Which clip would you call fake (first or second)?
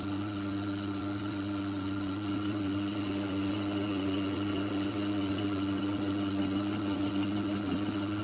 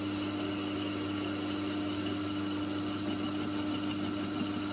first